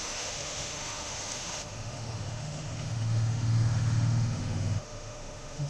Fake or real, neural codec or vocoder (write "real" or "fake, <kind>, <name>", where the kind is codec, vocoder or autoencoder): fake, autoencoder, DAC-VAE